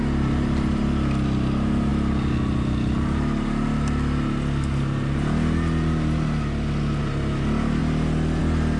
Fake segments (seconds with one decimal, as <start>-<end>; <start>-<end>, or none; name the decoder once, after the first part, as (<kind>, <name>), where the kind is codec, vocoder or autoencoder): none